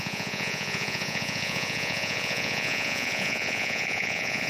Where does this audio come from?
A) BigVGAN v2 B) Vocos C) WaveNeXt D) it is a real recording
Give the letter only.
B